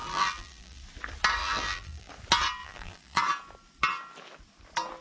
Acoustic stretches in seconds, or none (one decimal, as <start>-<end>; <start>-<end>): 0.8-1.4; 2.1-2.6; 3.2-5.0